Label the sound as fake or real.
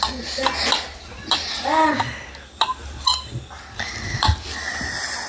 real